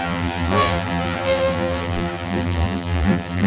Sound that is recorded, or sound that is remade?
remade